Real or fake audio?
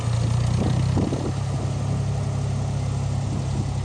real